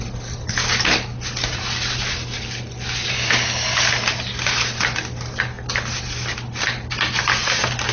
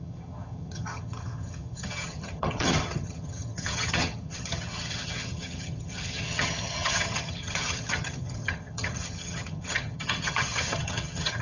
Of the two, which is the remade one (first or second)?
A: second